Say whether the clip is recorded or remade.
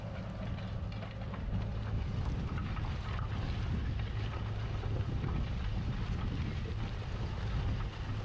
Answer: recorded